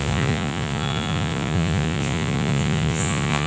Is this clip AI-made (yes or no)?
yes